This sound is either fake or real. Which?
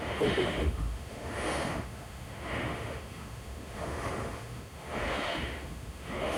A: fake